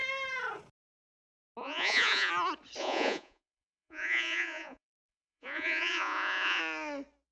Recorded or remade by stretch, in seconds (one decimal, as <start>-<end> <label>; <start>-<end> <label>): 0.0-1.6 recorded; 1.6-2.3 remade; 2.3-2.8 recorded; 2.8-6.6 remade; 6.6-7.3 recorded